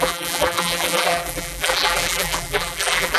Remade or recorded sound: remade